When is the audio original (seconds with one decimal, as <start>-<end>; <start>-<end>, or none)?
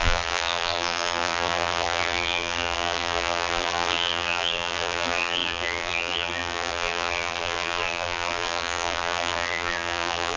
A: none